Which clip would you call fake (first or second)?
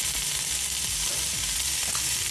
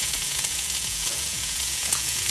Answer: second